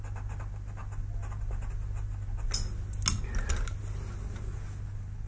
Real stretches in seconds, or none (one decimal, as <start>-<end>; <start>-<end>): 0.0-5.3